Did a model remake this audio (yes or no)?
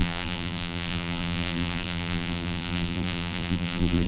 yes